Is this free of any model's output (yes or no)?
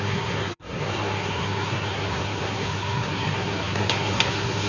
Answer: no